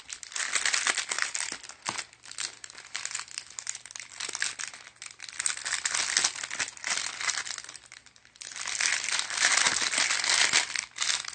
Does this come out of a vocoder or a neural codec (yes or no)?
no